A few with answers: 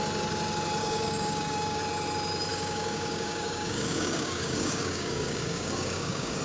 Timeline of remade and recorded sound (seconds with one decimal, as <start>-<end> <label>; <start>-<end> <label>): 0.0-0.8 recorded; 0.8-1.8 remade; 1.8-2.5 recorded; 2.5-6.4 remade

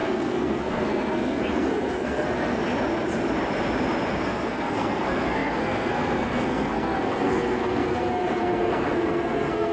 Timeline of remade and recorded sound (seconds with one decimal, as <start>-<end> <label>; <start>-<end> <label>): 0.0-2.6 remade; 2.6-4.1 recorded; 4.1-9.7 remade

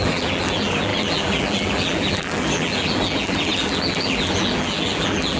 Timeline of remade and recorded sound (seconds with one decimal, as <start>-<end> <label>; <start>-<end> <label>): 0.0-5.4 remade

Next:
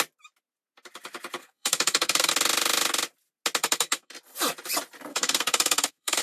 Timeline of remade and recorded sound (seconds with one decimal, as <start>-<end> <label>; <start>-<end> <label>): 0.0-1.4 recorded; 1.4-2.3 remade; 2.3-3.6 recorded; 3.6-4.1 remade; 4.1-5.1 recorded; 5.1-6.2 remade

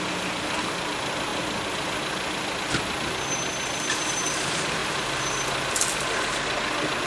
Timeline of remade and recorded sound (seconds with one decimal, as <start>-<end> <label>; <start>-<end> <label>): 0.0-7.1 recorded